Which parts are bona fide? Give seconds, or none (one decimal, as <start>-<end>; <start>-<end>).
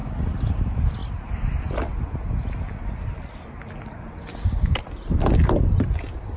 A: 1.0-4.8